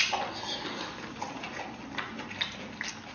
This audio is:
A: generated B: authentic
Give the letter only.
B